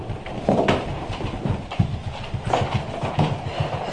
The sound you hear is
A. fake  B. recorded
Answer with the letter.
B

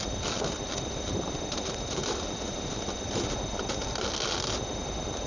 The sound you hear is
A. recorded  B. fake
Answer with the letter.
A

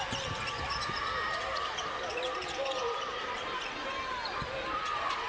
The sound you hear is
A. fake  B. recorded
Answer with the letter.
B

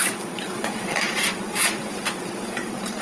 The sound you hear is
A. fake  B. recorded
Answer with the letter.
A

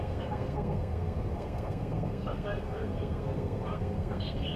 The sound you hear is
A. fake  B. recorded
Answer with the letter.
A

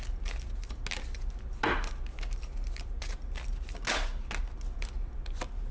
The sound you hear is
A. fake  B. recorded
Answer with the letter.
B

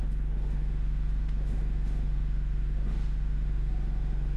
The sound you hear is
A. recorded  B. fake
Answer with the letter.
B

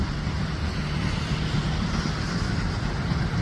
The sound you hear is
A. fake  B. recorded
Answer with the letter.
B